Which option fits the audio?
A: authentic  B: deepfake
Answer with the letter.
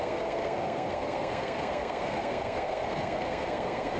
B